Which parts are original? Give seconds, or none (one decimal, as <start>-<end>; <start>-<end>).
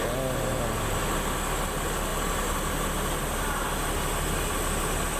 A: 0.0-5.2